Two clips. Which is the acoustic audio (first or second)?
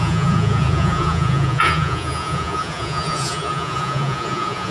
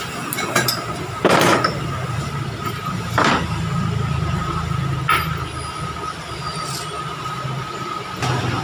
second